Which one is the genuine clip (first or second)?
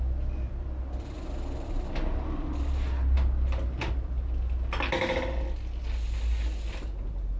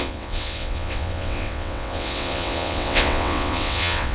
first